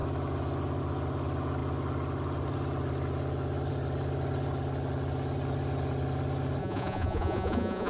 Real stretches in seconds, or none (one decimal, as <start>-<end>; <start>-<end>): 0.0-6.6